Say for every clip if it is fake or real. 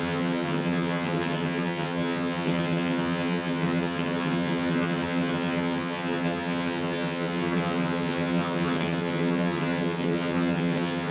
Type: fake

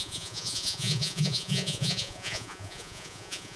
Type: fake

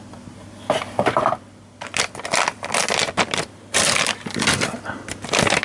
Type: real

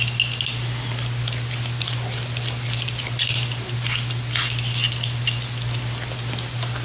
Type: real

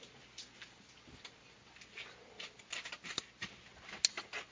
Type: real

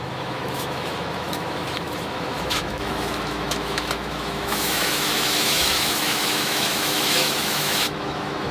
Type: fake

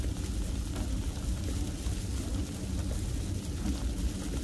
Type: real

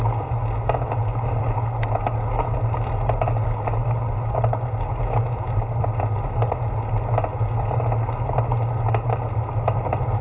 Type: real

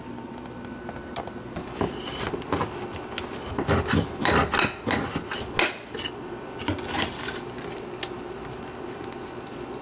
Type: real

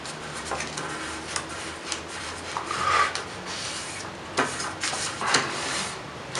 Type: fake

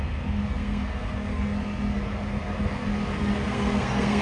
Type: fake